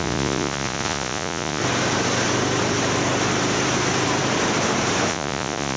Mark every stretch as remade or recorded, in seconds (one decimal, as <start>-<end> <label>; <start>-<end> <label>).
0.0-1.6 remade; 1.6-5.1 recorded; 5.1-5.8 remade